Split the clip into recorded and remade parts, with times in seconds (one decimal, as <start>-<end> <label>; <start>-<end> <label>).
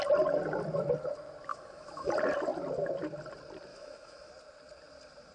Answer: 0.0-1.5 recorded; 1.5-2.1 remade; 2.1-3.7 recorded; 3.7-4.3 remade; 4.3-5.3 recorded